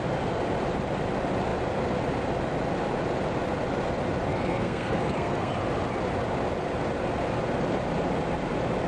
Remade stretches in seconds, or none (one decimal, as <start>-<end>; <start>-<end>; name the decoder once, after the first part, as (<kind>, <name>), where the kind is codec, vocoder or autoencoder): 4.3-5.5 (codec, SNAC)